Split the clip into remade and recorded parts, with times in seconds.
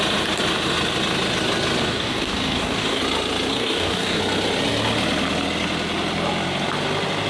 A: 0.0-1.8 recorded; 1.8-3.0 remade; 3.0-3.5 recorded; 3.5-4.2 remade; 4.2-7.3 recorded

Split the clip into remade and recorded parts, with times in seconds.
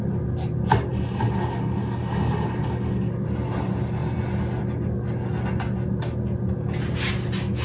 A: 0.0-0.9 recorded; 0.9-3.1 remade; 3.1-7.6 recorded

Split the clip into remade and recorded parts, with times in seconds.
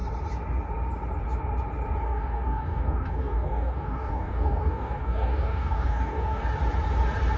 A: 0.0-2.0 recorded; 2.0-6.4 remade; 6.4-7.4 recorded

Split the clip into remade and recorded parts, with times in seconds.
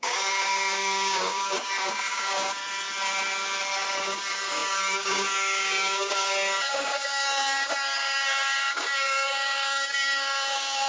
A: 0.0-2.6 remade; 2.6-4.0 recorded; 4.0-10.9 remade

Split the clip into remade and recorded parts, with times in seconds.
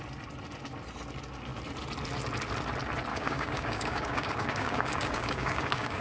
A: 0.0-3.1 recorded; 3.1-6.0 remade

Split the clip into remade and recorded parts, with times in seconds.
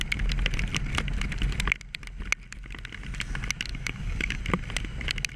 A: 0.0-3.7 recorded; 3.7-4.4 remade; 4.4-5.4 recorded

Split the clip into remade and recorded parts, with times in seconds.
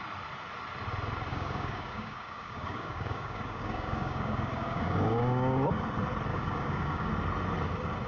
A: 0.0-1.3 recorded; 1.3-5.8 remade; 5.8-6.3 recorded; 6.3-7.1 remade; 7.1-8.1 recorded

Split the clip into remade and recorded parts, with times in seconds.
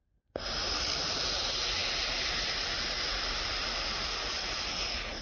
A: 0.0-5.2 recorded